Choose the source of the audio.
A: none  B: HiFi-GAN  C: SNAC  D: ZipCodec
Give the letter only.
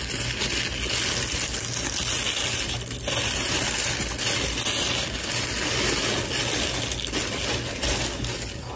A